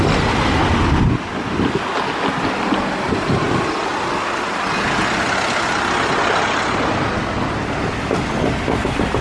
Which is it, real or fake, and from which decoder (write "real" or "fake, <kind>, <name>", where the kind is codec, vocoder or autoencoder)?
real